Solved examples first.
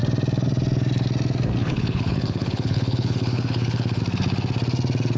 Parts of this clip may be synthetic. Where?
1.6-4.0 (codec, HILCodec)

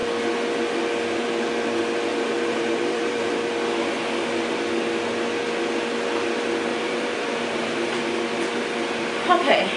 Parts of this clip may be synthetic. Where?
2.1-3.4 (vocoder, BigVGAN v2); 6.7-8.0

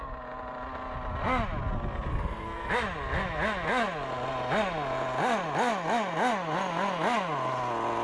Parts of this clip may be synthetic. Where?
2.1-2.7 (codec, SNAC)

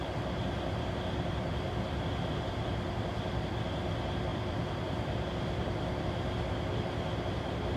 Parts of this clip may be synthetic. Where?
0.0-1.3 (vocoder, BigVGAN v2); 4.3-5.9

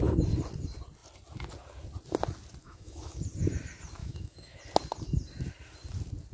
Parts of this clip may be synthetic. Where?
2.6-3.2 (autoencoder, DAC-VAE); 4.0-4.6

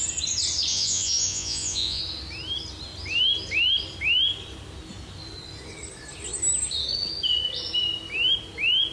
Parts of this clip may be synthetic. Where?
0.7-2.0 (vocoder, Vocos)

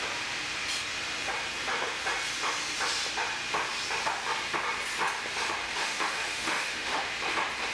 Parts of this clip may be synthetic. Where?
5.6-7.1 (autoencoder, DAC-VAE)

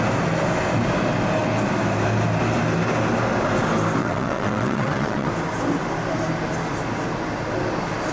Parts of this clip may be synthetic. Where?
4.0-5.3 (vocoder, WaveNeXt)